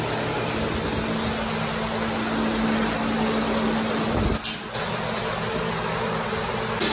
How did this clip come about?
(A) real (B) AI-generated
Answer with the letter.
A